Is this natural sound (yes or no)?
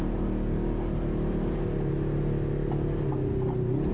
yes